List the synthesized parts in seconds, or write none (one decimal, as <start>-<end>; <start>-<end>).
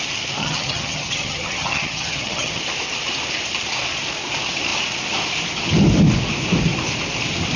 0.4-2.6